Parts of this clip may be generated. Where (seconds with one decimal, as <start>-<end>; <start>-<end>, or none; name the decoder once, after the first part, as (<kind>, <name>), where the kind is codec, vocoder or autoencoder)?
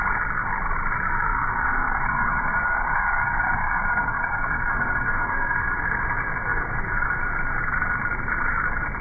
1.3-5.8 (codec, DAC); 6.5-7.1